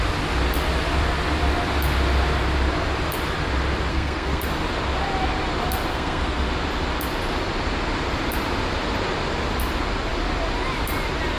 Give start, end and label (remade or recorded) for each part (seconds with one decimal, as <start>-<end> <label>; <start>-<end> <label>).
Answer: 0.0-3.9 recorded; 3.9-4.4 remade; 4.4-5.9 recorded; 5.9-6.5 remade; 6.5-11.4 recorded